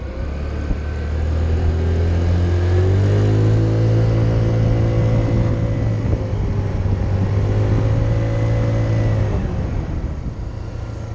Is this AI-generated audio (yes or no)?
no